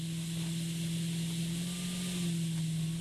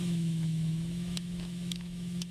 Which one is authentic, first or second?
first